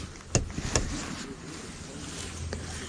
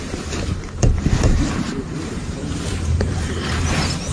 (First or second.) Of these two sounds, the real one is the first